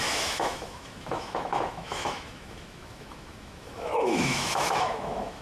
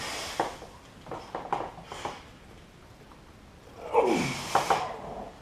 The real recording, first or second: second